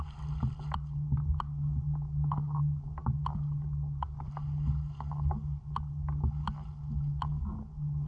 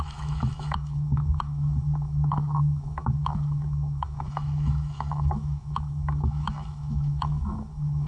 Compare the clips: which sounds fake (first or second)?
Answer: second